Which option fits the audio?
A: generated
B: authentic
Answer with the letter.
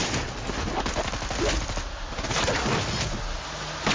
B